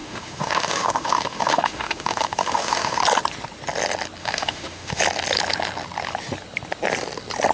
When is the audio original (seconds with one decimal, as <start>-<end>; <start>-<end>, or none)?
3.0-4.2; 5.0-7.5